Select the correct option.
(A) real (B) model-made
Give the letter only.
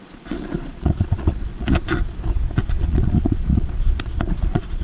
B